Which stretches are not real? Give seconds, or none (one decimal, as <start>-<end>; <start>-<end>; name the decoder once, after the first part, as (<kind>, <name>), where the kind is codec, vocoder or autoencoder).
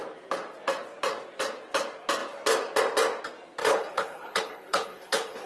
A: 3.6-5.5 (codec, HILCodec)